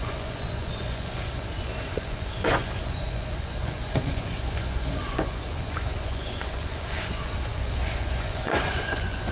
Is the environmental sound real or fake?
fake